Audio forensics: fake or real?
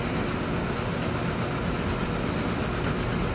real